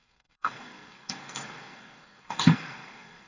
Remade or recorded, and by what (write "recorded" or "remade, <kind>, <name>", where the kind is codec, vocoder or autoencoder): remade, codec, SNAC